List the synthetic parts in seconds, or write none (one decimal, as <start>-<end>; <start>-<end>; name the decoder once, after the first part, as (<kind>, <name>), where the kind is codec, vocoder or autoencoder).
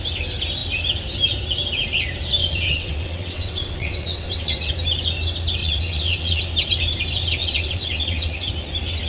2.4-4.7 (vocoder, WaveNeXt); 5.6-6.4; 7.4-8.5